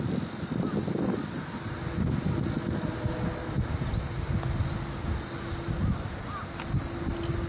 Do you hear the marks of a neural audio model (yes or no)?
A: no